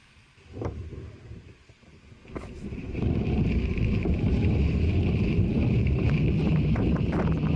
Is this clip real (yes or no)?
no